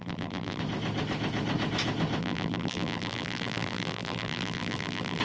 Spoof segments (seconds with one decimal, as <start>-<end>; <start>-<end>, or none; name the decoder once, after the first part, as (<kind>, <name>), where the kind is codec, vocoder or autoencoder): 0.0-0.6 (vocoder, BigVGAN v2); 2.2-5.2